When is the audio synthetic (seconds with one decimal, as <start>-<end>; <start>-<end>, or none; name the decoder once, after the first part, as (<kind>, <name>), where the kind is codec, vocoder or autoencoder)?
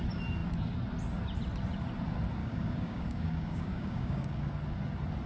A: 2.4-4.5 (codec, DAC)